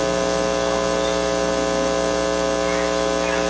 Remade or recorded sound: recorded